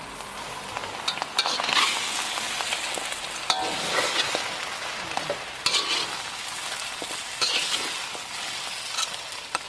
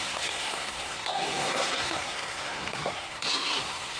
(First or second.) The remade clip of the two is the second